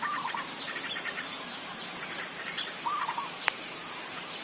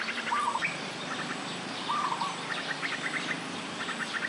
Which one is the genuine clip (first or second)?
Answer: second